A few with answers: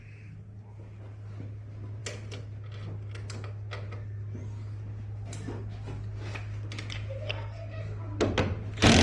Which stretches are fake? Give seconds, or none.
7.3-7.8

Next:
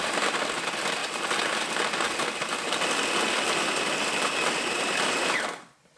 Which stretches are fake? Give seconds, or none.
none

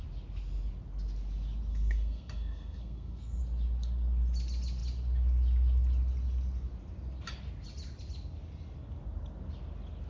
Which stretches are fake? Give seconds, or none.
1.7-3.4

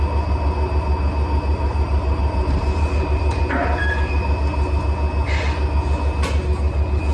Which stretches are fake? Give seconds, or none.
1.5-3.4

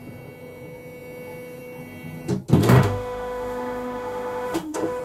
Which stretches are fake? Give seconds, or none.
2.6-5.0

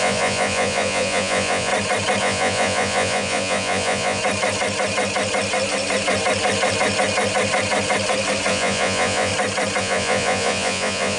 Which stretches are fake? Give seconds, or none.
0.0-1.7; 2.2-4.2; 8.5-9.3; 9.8-11.2

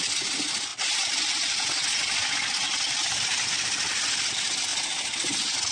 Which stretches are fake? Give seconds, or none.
none

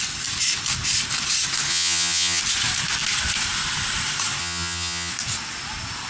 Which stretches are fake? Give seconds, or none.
1.7-2.4; 4.4-5.1